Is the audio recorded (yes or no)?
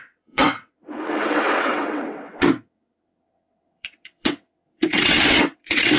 no